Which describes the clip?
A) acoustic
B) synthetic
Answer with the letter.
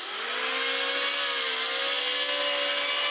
A